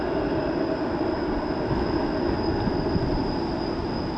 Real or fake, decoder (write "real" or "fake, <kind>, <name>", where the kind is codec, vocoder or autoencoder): real